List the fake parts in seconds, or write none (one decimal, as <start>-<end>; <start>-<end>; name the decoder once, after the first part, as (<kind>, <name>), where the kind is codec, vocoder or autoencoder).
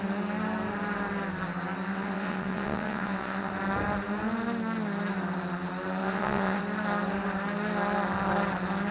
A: 1.9-3.5 (vocoder, WaveNeXt); 6.0-6.6